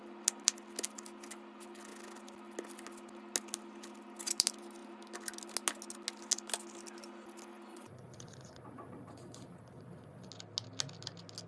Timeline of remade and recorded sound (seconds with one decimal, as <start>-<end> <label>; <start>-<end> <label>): 0.0-7.7 recorded; 7.7-10.3 remade; 10.3-11.5 recorded